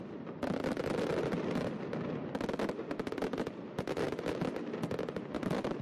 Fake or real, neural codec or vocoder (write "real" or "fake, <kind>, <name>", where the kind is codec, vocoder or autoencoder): real